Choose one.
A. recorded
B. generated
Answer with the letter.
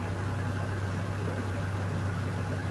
A